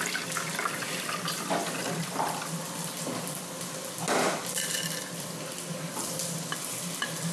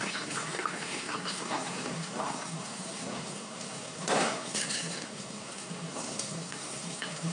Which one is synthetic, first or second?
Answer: second